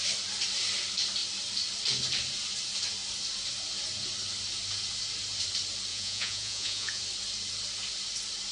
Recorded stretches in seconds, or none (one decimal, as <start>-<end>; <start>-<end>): 0.0-5.9; 7.0-8.5